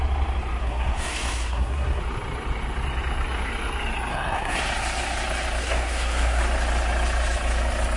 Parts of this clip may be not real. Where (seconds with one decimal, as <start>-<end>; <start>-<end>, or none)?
0.6-2.0; 4.1-4.6; 5.6-6.4